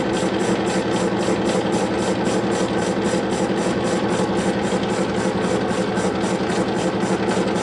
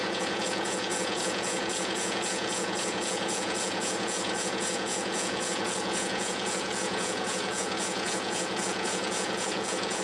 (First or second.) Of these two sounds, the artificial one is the second